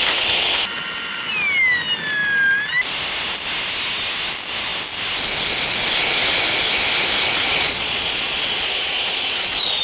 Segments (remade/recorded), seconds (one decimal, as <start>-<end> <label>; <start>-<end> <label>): 0.0-7.5 recorded; 7.5-9.8 remade